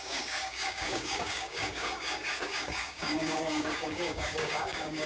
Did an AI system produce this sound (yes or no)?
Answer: yes